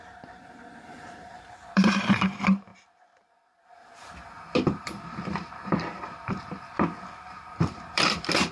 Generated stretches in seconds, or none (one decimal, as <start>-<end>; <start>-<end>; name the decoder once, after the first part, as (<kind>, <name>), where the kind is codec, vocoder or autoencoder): 0.0-2.7 (vocoder, BigVGAN v2); 7.6-8.5